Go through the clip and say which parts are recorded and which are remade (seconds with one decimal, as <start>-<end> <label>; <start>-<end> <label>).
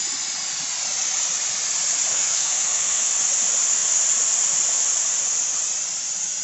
0.0-2.1 recorded; 2.1-3.0 remade; 3.0-6.4 recorded